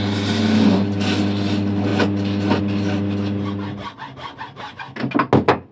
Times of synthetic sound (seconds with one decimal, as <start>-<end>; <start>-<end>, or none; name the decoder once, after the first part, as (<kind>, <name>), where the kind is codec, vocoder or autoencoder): none